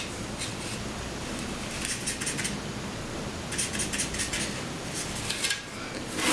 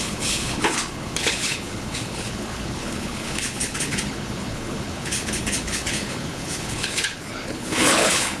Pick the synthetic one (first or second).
second